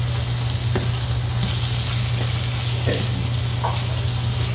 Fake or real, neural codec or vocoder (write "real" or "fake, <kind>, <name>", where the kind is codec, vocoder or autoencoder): real